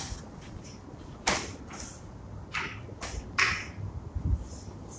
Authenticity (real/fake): real